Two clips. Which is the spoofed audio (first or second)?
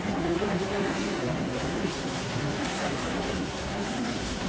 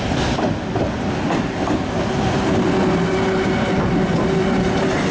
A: first